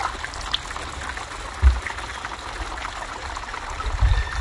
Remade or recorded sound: recorded